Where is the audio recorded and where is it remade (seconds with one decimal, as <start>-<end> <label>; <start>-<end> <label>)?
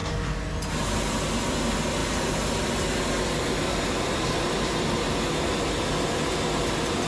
0.0-7.1 recorded